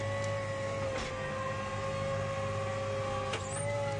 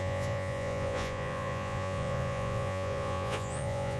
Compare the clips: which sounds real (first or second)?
first